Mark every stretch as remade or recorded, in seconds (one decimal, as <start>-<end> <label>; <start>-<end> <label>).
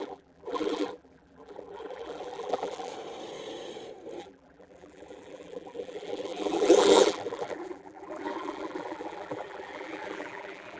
0.0-2.9 remade; 2.9-4.2 recorded; 4.2-10.8 remade